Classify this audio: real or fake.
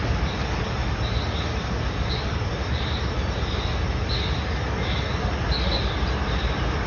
real